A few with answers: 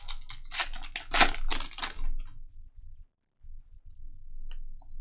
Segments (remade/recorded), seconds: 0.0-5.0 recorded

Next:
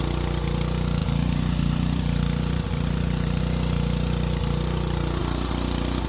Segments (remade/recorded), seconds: 0.0-1.0 recorded; 1.0-3.4 remade; 3.4-6.1 recorded

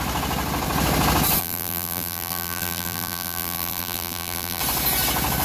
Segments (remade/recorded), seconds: 0.0-1.4 recorded; 1.4-4.6 remade; 4.6-5.4 recorded

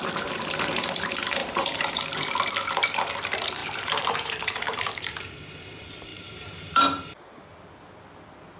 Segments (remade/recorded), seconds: 0.0-1.4 recorded; 1.4-2.0 remade; 2.0-3.6 recorded; 3.6-5.5 remade; 5.5-6.1 recorded; 6.1-7.2 remade; 7.2-8.6 recorded